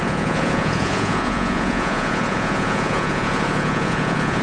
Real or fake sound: fake